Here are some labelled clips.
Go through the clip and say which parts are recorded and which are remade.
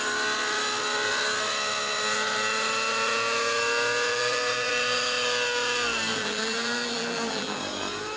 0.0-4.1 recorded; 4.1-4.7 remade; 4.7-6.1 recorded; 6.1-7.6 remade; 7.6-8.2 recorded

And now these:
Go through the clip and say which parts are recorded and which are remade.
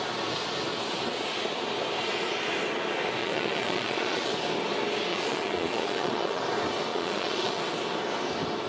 0.0-3.2 recorded; 3.2-4.3 remade; 4.3-5.1 recorded; 5.1-6.4 remade; 6.4-6.9 recorded; 6.9-7.6 remade; 7.6-8.7 recorded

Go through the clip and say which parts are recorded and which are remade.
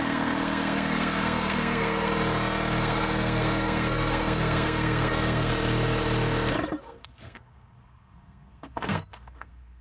0.0-2.1 remade; 2.1-2.8 recorded; 2.8-5.5 remade; 5.5-6.8 recorded; 6.8-9.8 remade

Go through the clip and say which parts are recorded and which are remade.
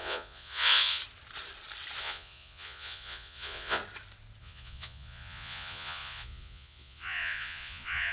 0.0-1.0 remade; 1.0-2.0 recorded; 2.0-3.8 remade; 3.8-4.4 recorded; 4.4-8.1 remade